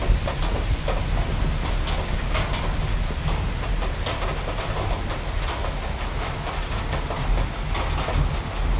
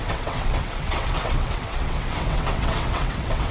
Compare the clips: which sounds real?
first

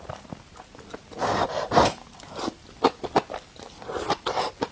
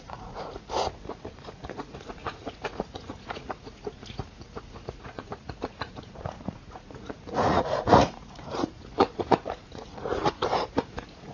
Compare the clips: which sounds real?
first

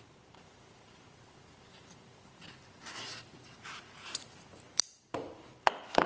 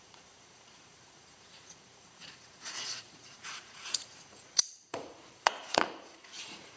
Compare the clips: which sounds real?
first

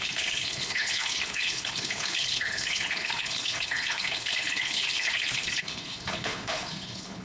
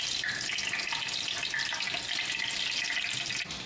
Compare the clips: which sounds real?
second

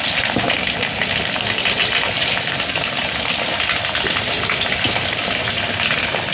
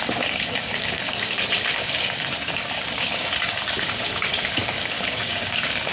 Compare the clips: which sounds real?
first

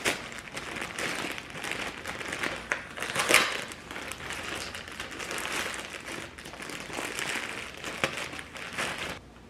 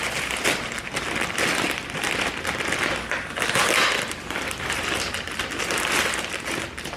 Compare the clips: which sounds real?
first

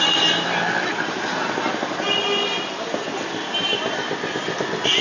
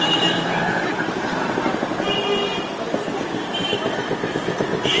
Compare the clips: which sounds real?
first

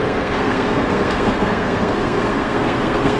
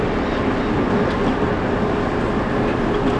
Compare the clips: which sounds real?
second